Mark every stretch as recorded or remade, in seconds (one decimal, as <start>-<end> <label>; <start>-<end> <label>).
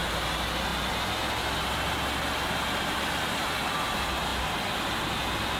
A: 0.0-5.6 recorded